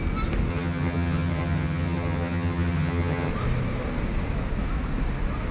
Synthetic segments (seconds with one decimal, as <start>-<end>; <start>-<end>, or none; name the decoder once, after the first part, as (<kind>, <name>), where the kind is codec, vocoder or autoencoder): 0.5-3.3 (vocoder, HiFi-GAN)